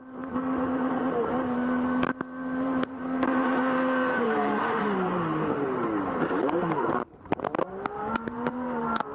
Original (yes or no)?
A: no